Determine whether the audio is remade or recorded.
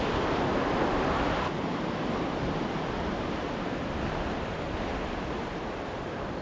recorded